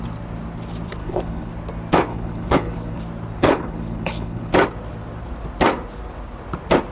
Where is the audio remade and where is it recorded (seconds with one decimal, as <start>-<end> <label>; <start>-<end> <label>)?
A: 0.0-1.0 recorded; 1.0-1.5 remade; 1.5-2.1 recorded; 2.1-3.0 remade; 3.0-3.4 recorded; 3.4-4.5 remade; 4.5-6.9 recorded